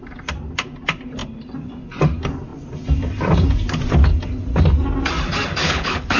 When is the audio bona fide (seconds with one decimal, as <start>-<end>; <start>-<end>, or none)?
0.0-5.6